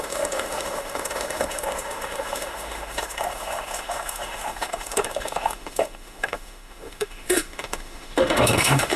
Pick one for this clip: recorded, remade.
remade